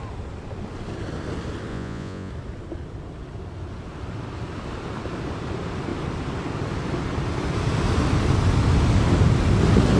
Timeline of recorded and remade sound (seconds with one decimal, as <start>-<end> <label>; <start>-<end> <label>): 0.0-1.7 recorded; 1.7-2.3 remade; 2.3-10.0 recorded